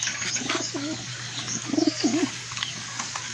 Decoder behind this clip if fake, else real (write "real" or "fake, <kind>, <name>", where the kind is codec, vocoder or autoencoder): fake, codec, DAC